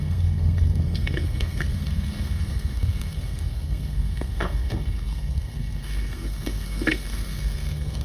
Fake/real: fake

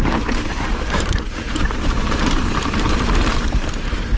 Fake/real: fake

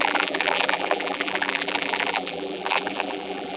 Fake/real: fake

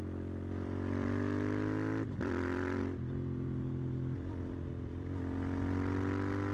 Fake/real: fake